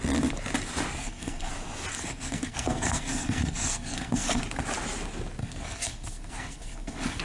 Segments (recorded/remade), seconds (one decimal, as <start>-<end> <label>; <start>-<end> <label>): 0.0-1.0 recorded; 1.0-1.5 remade; 1.5-1.9 recorded; 1.9-4.4 remade; 4.4-5.4 recorded; 5.4-7.2 remade